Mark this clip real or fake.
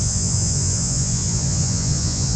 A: fake